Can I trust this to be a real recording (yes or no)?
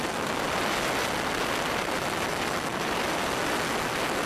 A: yes